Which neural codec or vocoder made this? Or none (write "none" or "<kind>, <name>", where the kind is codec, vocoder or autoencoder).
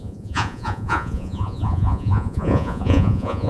vocoder, Vocos